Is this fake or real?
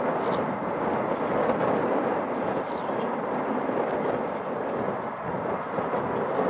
real